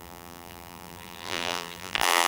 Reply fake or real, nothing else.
fake